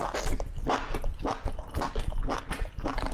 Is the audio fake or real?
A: real